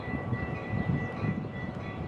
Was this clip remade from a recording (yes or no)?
yes